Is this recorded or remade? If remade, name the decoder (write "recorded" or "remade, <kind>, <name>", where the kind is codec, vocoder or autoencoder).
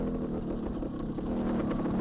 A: recorded